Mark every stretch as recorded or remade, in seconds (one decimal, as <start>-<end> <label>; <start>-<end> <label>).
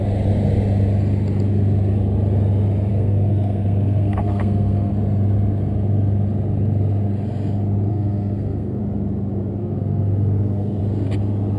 0.0-2.9 recorded; 2.9-4.9 remade; 4.9-7.9 recorded; 7.9-8.8 remade; 8.8-9.6 recorded; 9.6-10.8 remade; 10.8-11.6 recorded